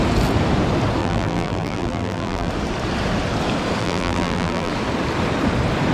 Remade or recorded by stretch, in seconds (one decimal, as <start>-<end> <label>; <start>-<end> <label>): 0.0-1.0 recorded; 1.0-2.5 remade; 2.5-3.8 recorded; 3.8-4.7 remade; 4.7-5.9 recorded